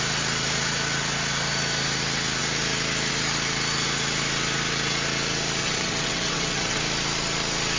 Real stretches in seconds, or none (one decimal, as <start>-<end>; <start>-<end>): 0.0-5.6; 6.8-7.8

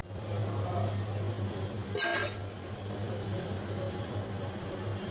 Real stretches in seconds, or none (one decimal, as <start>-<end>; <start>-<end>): 0.0-2.1; 2.9-5.1

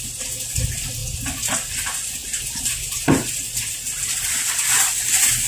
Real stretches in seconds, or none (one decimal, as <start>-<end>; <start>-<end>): 1.0-1.7

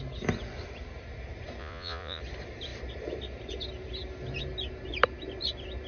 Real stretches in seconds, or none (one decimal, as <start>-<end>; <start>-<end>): 0.0-1.6; 2.2-5.9

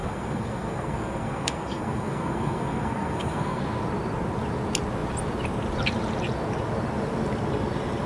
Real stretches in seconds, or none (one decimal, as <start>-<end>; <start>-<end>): 3.6-8.1

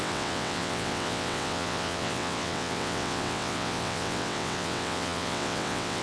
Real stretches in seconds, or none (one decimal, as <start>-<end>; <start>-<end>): none

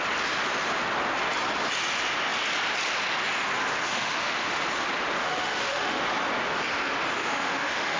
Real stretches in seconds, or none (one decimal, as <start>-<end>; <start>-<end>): 0.0-3.8; 4.6-5.2; 6.0-7.2

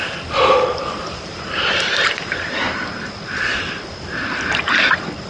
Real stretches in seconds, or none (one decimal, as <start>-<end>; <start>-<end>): 0.0-1.3; 3.1-5.3